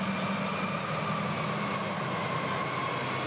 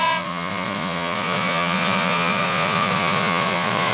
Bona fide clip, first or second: first